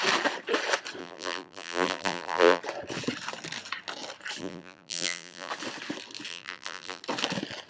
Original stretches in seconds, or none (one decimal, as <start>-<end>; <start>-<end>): 0.0-1.0; 2.6-4.4; 5.5-6.3; 7.0-7.7